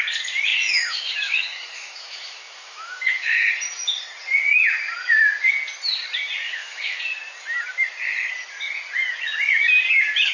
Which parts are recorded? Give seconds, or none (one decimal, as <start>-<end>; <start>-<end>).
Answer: 0.0-0.5; 3.5-6.4; 7.0-10.3